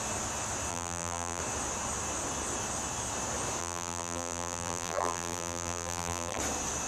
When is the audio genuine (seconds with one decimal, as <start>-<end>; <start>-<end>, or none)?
0.0-0.7; 1.4-3.6; 6.4-6.9